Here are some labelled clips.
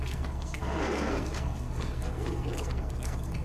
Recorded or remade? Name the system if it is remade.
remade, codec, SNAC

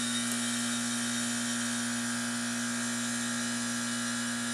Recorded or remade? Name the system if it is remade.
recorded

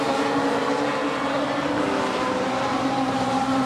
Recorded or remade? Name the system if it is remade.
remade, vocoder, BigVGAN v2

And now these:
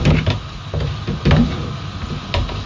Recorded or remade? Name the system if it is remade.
recorded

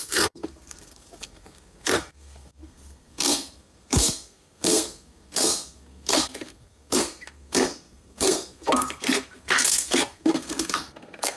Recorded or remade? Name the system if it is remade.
remade, codec, SNAC